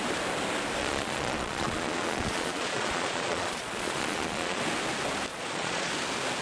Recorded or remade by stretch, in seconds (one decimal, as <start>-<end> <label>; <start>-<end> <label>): 0.0-0.8 recorded; 0.8-4.6 remade; 4.6-5.3 recorded; 5.3-5.9 remade; 5.9-6.4 recorded